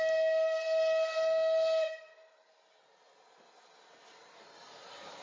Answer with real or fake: real